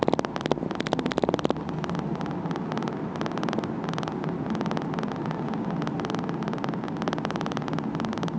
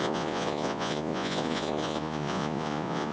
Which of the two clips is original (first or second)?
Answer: first